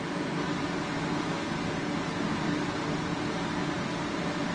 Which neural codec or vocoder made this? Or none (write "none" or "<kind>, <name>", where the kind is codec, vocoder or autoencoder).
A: none